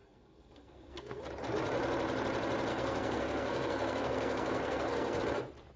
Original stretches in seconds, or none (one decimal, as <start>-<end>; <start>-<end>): 1.2-2.7; 5.2-5.8